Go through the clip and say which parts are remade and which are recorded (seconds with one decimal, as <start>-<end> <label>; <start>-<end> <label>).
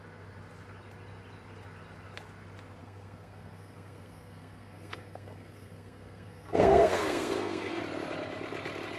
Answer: 0.0-2.8 recorded; 2.8-7.8 remade; 7.8-9.0 recorded